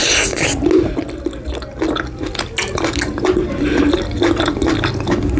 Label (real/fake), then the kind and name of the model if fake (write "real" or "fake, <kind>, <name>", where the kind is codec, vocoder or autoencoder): real